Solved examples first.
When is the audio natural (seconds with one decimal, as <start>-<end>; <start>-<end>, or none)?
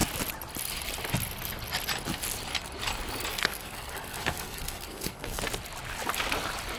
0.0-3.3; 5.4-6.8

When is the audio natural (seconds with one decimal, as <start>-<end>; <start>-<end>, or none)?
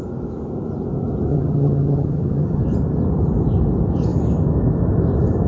0.0-1.3; 2.6-5.5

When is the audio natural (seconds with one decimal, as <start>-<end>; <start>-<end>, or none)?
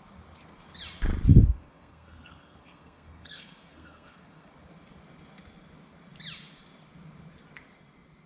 0.0-1.3; 4.5-8.3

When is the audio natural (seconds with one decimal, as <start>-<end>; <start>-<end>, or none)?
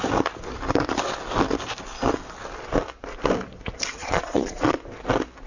0.0-4.0; 4.8-5.5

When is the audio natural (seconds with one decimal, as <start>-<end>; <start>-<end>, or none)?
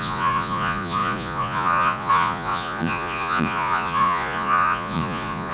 none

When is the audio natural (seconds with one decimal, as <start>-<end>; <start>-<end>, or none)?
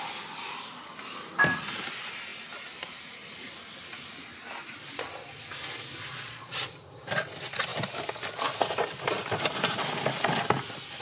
0.0-6.1; 6.7-11.0